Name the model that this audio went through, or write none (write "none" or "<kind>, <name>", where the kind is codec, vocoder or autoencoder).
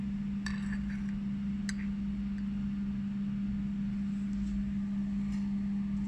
none